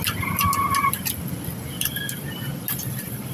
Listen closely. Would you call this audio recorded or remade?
recorded